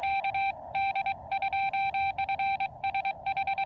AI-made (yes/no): no